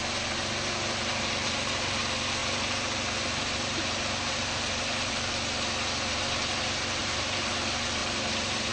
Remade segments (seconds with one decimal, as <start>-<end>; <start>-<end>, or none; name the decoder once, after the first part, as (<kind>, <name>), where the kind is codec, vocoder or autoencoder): 0.4-2.0 (vocoder, BigVGAN v2); 2.4-5.1; 7.0-7.5; 8.0-8.7